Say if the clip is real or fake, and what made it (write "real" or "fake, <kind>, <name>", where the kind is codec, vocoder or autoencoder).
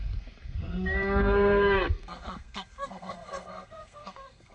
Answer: fake, codec, SNAC